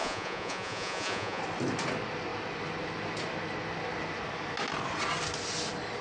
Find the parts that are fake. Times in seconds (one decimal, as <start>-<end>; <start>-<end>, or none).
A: 0.0-1.4